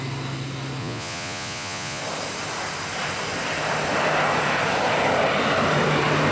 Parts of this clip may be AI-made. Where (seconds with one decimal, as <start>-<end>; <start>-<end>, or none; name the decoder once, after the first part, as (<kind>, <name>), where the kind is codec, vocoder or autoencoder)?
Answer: 0.8-2.0 (vocoder, Vocos)